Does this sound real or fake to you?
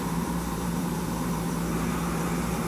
fake